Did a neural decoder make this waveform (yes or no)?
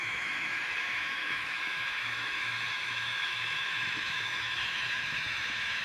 yes